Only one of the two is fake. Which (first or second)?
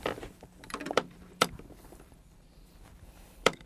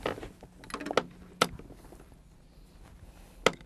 first